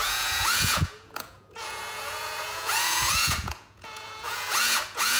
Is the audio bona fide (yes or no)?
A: no